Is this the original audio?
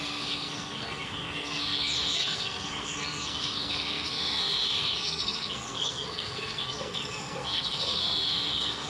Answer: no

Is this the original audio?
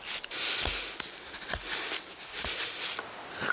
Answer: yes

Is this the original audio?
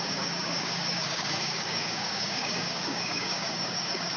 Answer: no